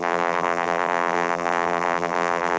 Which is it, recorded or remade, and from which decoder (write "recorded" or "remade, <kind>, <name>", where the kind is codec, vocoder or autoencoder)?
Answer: remade, vocoder, BigVGAN v2